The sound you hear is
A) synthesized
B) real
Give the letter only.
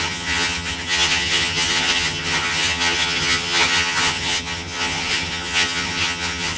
A